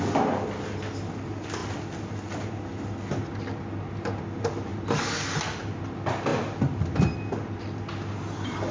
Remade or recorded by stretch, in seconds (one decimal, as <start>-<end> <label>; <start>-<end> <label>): 0.0-1.6 recorded; 1.6-2.4 remade; 2.4-8.7 recorded